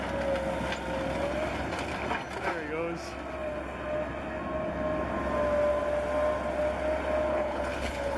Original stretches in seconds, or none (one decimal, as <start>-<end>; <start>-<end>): 0.0-7.3